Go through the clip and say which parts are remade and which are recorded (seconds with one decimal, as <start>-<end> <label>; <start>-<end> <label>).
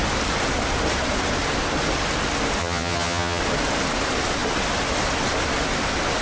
0.0-2.6 recorded; 2.6-3.4 remade; 3.4-6.2 recorded